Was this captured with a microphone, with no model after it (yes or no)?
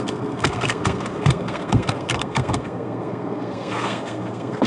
no